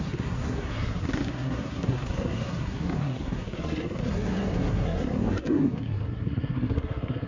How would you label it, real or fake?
fake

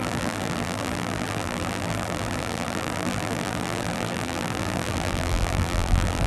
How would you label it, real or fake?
fake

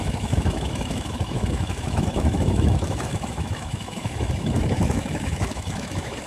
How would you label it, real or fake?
fake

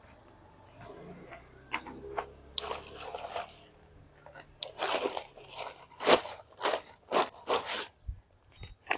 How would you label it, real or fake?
real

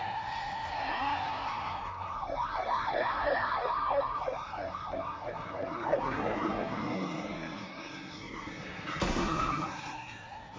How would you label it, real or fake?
fake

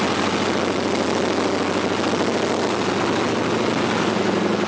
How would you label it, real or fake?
real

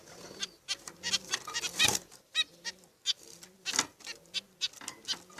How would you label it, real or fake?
real